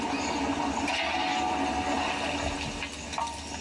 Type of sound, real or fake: real